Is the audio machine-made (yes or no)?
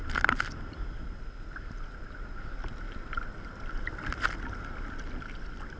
no